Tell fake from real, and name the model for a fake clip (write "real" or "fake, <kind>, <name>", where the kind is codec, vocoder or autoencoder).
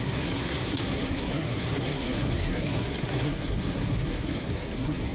fake, codec, SNAC